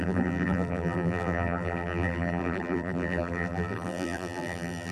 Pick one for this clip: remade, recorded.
remade